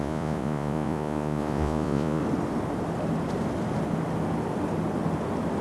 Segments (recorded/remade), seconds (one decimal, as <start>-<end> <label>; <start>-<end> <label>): 0.0-2.2 remade; 2.2-5.6 recorded